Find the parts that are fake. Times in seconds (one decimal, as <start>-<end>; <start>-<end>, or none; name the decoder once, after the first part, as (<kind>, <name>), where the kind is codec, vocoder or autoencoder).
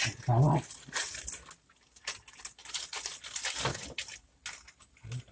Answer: none